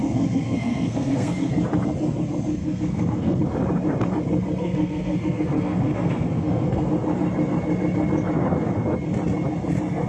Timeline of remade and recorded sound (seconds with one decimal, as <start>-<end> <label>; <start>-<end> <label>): 0.0-1.5 remade; 1.5-2.6 recorded; 2.6-3.4 remade; 3.4-4.6 recorded; 4.6-6.9 remade; 6.9-10.1 recorded